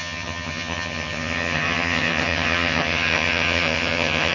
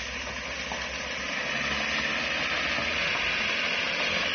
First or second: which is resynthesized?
first